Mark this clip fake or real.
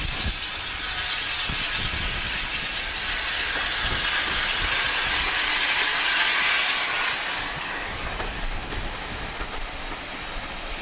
real